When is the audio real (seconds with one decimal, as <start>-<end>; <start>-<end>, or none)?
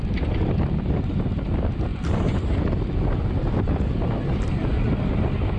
0.0-5.6